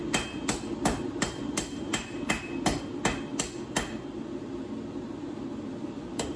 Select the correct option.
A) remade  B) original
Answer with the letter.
B